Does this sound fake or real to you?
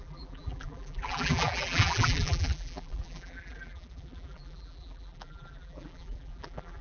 fake